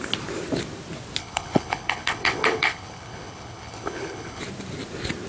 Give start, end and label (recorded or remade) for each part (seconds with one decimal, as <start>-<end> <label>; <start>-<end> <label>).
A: 0.0-1.2 recorded; 1.2-4.4 remade; 4.4-5.3 recorded